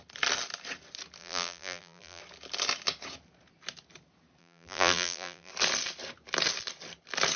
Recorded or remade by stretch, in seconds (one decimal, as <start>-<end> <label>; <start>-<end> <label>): 0.0-1.2 recorded; 1.2-2.2 remade; 2.2-4.4 recorded; 4.4-5.5 remade; 5.5-7.4 recorded